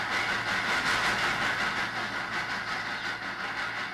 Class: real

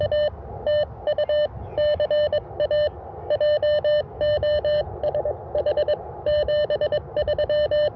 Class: real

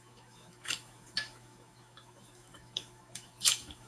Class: fake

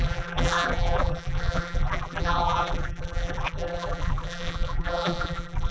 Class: fake